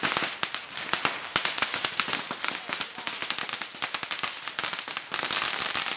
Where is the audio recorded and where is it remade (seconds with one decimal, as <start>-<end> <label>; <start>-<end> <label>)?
0.0-1.3 recorded; 1.3-1.9 remade; 1.9-6.0 recorded